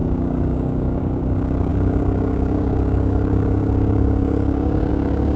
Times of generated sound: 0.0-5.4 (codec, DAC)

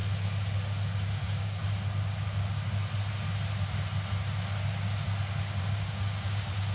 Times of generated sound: 1.0-1.6 (codec, DAC); 5.6-6.7

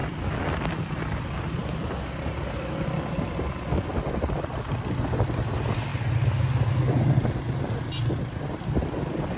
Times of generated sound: none

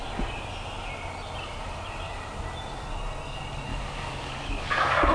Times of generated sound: 3.7-5.1 (codec, DAC)

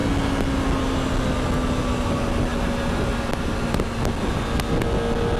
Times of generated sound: none

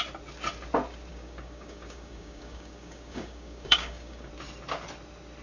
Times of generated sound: 1.1-4.3 (codec, DAC)